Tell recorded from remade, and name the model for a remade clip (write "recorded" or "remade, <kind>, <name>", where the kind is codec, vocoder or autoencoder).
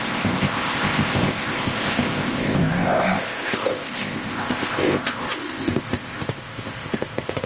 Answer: remade, codec, ZipCodec